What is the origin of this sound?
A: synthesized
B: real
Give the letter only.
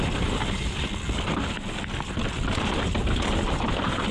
B